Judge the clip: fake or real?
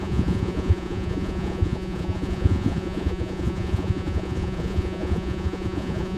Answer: fake